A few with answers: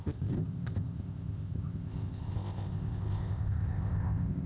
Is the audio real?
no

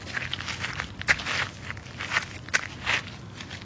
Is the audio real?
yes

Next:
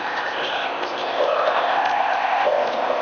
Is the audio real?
no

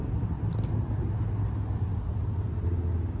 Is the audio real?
yes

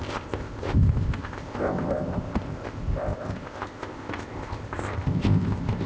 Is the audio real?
no